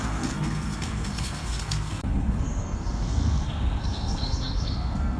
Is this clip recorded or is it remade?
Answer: remade